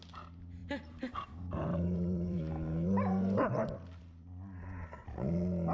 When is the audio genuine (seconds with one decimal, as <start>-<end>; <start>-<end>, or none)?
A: 0.0-0.6; 4.0-5.7